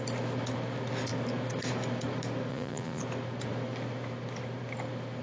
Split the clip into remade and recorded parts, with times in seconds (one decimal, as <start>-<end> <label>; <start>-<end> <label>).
0.0-2.5 recorded; 2.5-3.0 remade; 3.0-5.2 recorded